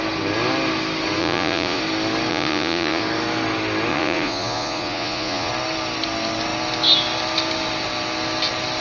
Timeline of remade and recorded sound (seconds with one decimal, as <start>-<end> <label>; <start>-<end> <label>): 0.0-1.2 recorded; 1.2-1.8 remade; 1.8-2.3 recorded; 2.3-3.0 remade; 3.0-3.9 recorded; 3.9-5.5 remade; 5.5-8.8 recorded